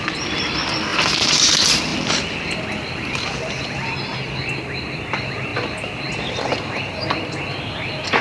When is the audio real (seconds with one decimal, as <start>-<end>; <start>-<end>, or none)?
0.0-8.2

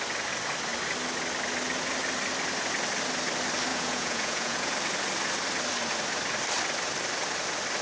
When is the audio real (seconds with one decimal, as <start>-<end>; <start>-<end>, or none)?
0.0-3.7; 4.7-7.8

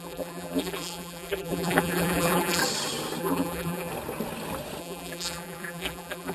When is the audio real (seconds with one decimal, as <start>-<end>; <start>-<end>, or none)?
2.6-3.2; 3.9-4.8

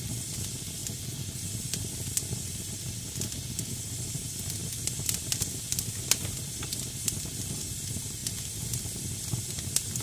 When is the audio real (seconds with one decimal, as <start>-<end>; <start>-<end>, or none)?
0.0-10.0

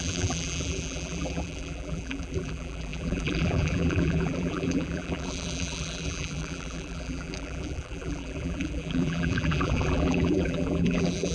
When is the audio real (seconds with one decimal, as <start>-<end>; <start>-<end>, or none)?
none